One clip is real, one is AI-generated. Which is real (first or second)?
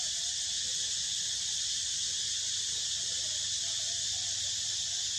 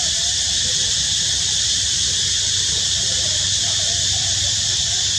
first